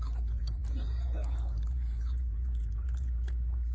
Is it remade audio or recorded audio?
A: remade